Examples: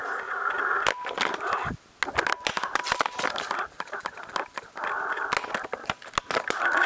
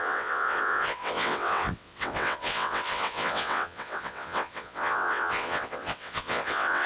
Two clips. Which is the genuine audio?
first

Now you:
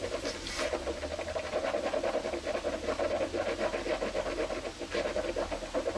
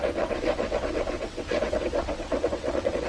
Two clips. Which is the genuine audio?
first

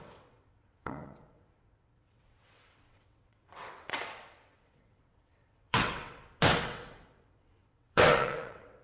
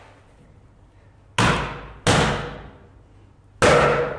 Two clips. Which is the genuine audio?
second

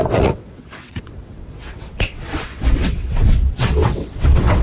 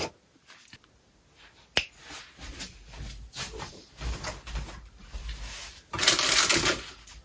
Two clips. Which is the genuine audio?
second